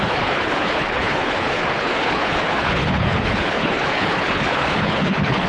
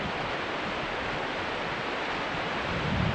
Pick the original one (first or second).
second